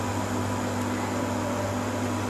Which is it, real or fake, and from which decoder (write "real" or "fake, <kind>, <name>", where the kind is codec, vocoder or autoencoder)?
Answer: real